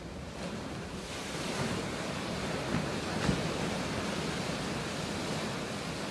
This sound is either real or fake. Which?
real